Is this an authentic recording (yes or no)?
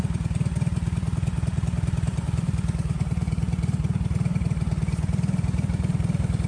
no